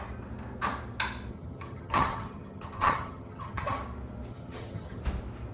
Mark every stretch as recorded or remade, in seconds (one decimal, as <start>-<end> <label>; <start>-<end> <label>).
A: 0.0-1.3 recorded; 1.3-3.8 remade; 3.8-4.3 recorded; 4.3-5.0 remade; 5.0-5.5 recorded